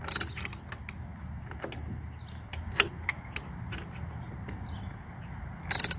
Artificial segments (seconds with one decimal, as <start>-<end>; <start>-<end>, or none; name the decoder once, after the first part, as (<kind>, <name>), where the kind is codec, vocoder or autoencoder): none